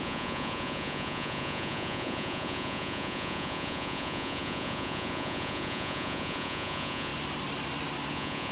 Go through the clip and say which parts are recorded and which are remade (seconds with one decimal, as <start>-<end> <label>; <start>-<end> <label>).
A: 0.0-7.1 remade; 7.1-8.1 recorded; 8.1-8.5 remade